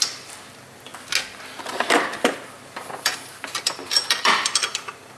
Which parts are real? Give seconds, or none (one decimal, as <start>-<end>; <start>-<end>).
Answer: 0.9-2.6